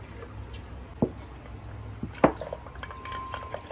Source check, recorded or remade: recorded